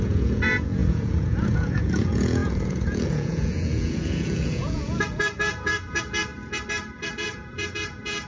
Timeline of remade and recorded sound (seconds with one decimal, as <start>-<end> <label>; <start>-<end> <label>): 0.0-6.3 remade; 6.3-7.0 recorded; 7.0-8.3 remade